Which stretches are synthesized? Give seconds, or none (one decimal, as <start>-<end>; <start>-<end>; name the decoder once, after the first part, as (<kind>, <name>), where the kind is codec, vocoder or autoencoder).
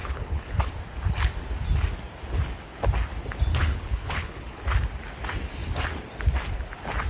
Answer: 0.0-0.7 (codec, HILCodec); 3.6-4.6